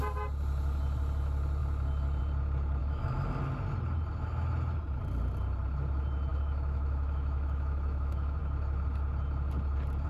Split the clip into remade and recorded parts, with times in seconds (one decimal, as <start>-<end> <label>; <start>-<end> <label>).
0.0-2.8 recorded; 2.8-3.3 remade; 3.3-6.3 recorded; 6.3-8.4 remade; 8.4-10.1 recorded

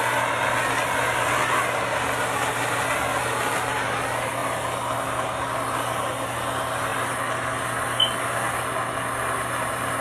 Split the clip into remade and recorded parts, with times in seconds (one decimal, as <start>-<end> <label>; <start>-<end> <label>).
0.0-10.0 recorded

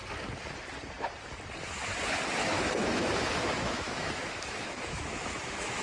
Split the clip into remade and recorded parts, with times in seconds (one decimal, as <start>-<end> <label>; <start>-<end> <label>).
0.0-2.4 recorded; 2.4-5.8 remade